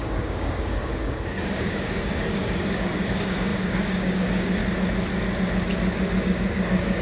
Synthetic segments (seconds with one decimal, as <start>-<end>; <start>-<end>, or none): 0.0-4.6; 6.2-7.0